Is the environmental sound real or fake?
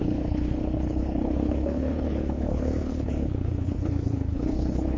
fake